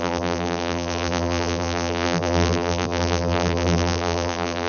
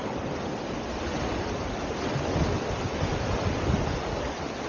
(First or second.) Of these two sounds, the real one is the second